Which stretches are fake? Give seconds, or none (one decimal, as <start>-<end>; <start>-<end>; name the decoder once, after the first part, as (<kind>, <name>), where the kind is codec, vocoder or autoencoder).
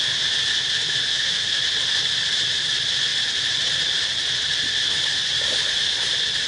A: 1.1-1.6 (autoencoder, DAC-VAE)